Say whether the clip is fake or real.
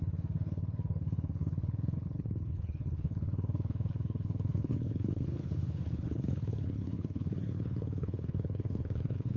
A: fake